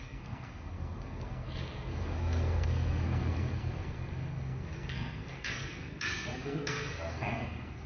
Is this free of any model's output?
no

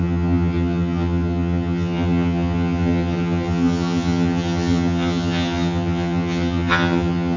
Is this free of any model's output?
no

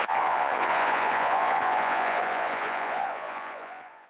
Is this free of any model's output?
no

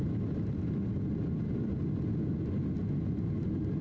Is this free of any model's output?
yes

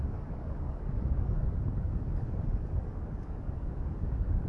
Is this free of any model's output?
no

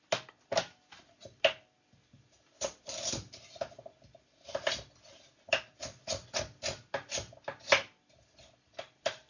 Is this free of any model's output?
yes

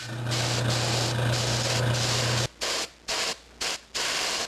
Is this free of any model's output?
yes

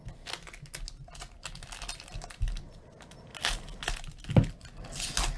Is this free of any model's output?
yes